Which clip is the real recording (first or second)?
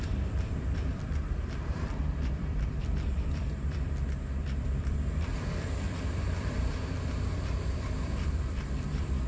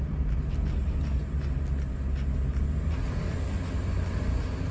second